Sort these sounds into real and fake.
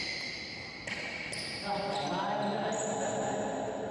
real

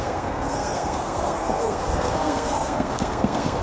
fake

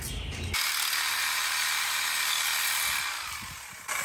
real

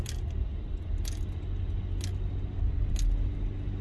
real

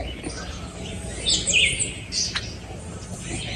real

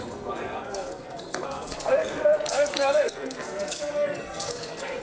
fake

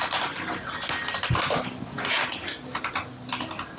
real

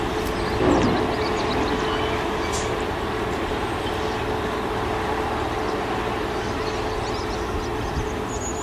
real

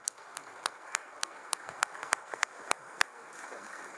fake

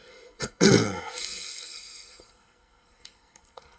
fake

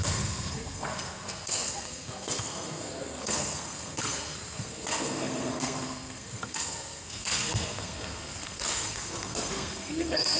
fake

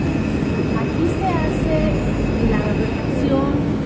real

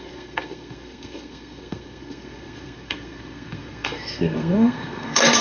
fake